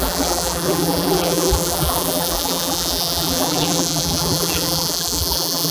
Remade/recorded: remade